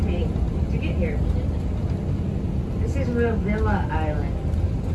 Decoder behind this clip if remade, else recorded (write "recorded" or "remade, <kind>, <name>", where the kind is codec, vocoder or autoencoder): recorded